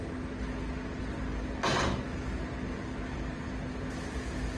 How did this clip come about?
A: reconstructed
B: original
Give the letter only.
B